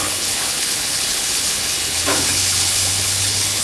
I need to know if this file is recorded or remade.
remade